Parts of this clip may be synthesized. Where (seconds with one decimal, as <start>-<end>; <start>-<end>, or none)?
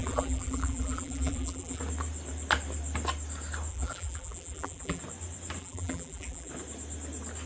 0.0-1.8; 3.7-5.0; 5.6-6.5